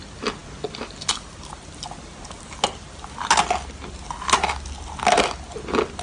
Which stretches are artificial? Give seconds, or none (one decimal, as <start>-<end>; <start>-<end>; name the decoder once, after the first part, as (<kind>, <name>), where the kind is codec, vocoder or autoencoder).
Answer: none